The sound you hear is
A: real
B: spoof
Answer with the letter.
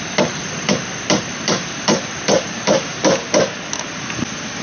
A